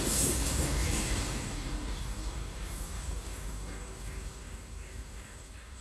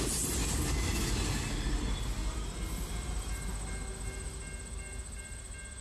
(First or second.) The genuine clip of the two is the second